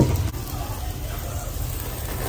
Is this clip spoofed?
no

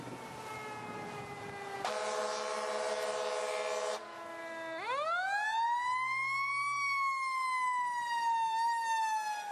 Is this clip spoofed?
no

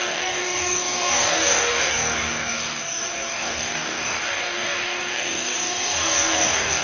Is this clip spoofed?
yes